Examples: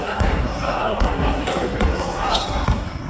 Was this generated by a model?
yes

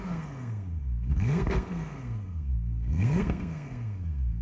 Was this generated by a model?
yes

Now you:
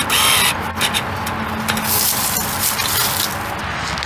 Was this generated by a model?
no